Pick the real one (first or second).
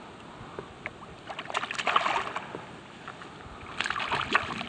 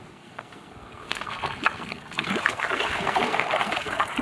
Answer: first